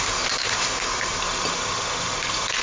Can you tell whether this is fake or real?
fake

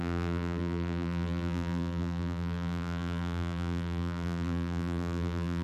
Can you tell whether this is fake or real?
fake